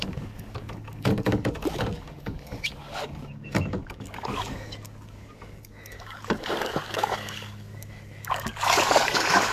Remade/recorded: remade